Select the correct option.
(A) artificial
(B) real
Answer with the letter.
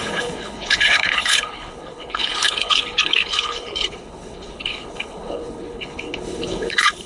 A